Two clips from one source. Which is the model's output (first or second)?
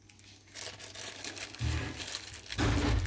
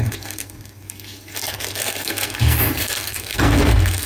second